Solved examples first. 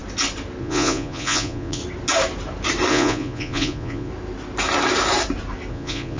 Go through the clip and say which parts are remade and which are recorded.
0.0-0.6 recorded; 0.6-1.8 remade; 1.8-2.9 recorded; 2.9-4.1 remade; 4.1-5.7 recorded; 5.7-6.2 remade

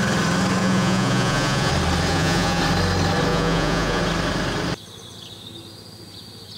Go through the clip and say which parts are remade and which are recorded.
0.0-0.6 recorded; 0.6-1.7 remade; 1.7-2.1 recorded; 2.1-2.6 remade; 2.6-3.3 recorded; 3.3-4.0 remade; 4.0-6.6 recorded

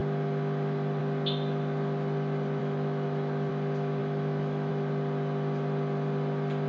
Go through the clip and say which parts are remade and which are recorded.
0.0-2.6 recorded; 2.6-3.5 remade; 3.5-4.0 recorded; 4.0-4.7 remade; 4.7-6.7 recorded